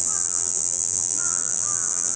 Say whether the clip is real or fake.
fake